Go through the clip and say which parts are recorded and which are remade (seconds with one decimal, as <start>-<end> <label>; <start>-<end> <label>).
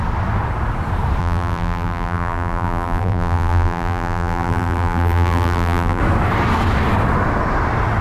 0.0-1.2 recorded; 1.2-6.0 remade; 6.0-8.0 recorded